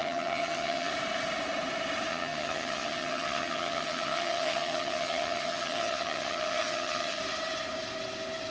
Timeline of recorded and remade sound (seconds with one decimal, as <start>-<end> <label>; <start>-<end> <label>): 0.0-0.9 remade; 0.9-2.1 recorded; 2.1-7.2 remade; 7.2-8.5 recorded